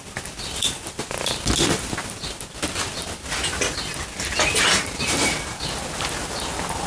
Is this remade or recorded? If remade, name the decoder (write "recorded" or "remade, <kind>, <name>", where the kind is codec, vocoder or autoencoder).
recorded